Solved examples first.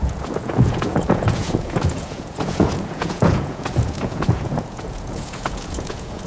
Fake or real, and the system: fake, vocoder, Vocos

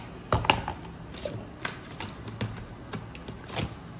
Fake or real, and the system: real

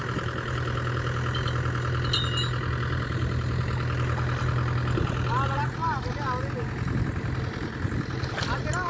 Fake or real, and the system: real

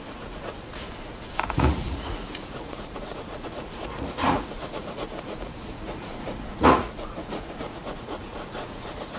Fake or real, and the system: fake, vocoder, Vocos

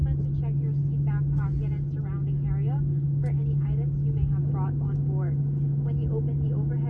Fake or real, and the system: real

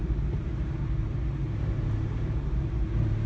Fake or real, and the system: real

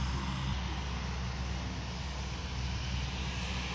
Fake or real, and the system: real